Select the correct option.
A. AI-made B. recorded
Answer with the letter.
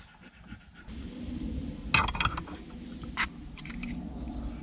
B